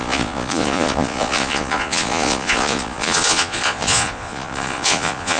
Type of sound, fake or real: fake